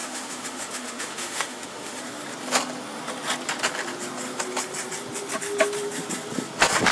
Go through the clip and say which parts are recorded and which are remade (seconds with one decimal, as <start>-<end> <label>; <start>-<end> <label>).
0.0-2.0 remade; 2.0-6.9 recorded